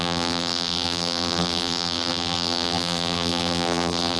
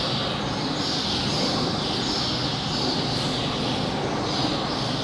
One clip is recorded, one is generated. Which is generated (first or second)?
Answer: first